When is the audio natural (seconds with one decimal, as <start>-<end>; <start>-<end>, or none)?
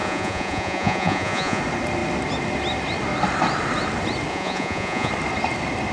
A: 1.6-4.3; 5.1-5.9